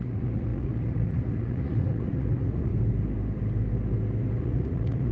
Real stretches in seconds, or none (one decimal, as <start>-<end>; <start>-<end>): 2.7-4.4